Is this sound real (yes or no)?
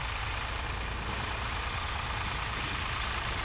yes